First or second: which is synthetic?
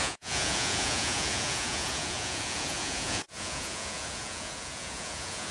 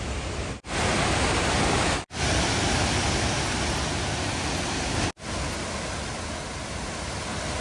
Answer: first